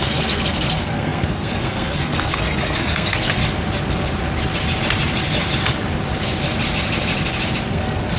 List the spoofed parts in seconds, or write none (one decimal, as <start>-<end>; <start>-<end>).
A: 0.0-3.4; 7.7-8.2